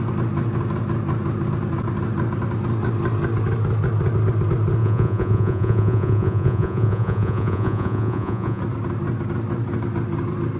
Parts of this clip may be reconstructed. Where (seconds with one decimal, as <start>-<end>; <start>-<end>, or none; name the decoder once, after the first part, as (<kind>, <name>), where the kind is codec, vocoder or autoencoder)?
4.8-8.6 (vocoder, Vocos)